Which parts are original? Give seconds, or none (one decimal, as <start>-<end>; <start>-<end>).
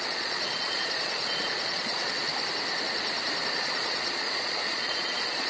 2.3-3.6